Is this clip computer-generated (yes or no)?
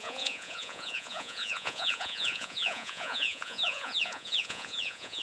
yes